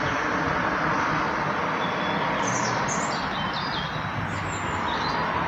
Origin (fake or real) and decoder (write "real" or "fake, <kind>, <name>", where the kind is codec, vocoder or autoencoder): real